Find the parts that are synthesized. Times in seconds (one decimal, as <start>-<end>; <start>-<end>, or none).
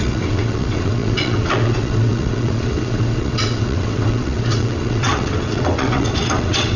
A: 0.0-6.8